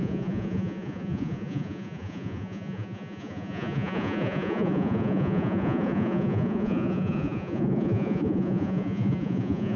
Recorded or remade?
remade